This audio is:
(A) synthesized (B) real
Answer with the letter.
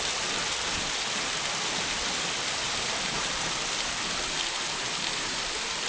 B